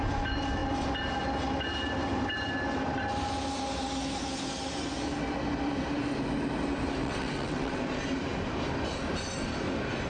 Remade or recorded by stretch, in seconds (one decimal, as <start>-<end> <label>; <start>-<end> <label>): 0.0-7.0 recorded; 7.0-7.8 remade; 7.8-10.1 recorded

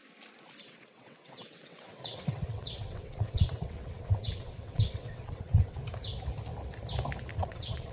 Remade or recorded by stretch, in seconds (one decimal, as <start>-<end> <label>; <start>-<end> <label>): 0.0-0.6 recorded; 0.6-5.8 remade; 5.8-7.3 recorded; 7.3-7.9 remade